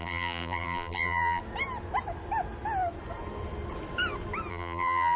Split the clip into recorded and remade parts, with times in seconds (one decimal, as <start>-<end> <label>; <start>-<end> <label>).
0.0-1.4 remade; 1.4-4.5 recorded; 4.5-5.2 remade